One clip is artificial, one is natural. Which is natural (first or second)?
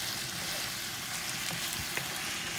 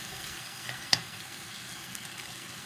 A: first